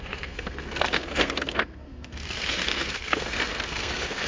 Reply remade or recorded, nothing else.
remade